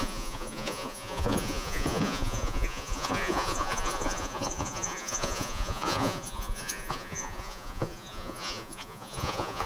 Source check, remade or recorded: remade